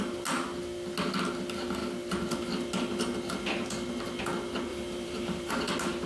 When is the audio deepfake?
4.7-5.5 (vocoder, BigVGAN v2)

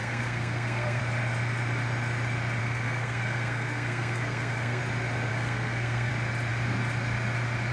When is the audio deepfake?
0.0-1.0 (codec, SNAC); 2.6-4.8; 5.3-6.1

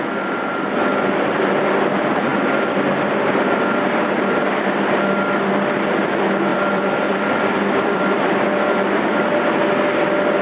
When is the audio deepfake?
2.3-2.9 (vocoder, BigVGAN v2); 6.5-9.1